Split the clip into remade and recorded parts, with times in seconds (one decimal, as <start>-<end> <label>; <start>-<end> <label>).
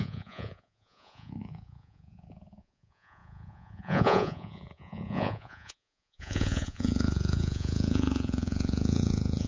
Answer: 0.0-9.5 remade